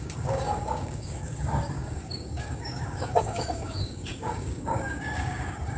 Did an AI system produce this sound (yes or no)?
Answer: yes